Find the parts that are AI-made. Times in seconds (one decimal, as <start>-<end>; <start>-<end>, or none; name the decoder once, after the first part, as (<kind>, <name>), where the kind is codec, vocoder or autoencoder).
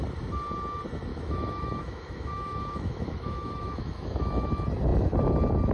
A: 1.1-4.5 (autoencoder, DAC-VAE)